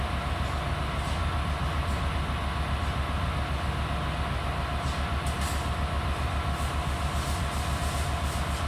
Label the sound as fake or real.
real